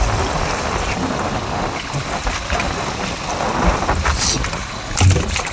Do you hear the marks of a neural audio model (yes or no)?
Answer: no